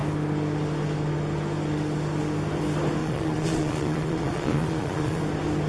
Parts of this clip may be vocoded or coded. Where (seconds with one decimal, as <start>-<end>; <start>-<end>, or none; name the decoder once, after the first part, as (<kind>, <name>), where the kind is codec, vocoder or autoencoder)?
3.0-5.2 (vocoder, Vocos)